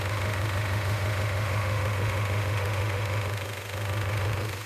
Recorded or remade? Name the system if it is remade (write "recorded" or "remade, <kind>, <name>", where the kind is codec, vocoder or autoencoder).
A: remade, autoencoder, DAC-VAE